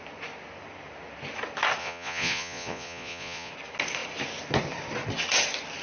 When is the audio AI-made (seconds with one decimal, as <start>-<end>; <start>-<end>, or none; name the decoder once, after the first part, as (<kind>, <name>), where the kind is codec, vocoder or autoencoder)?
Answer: 1.8-3.5 (vocoder, Vocos)